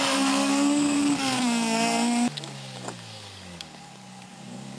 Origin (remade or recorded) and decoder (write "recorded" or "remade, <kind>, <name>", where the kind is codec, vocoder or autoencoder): remade, codec, DAC